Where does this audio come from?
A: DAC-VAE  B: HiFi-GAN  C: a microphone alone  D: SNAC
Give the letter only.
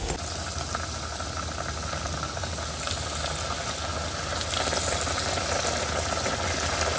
C